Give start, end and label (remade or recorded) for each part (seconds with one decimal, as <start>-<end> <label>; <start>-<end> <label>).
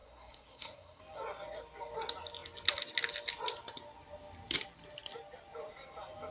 0.0-1.0 remade; 1.0-6.3 recorded